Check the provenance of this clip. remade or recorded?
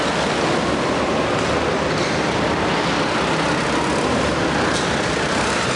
recorded